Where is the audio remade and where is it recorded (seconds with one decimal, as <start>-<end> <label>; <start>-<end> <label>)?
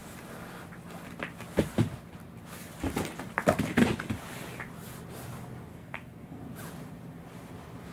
0.0-5.7 recorded; 5.7-6.4 remade; 6.4-7.9 recorded